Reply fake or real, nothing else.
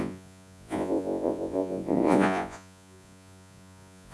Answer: fake